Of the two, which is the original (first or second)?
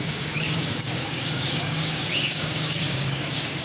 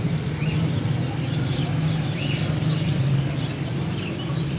second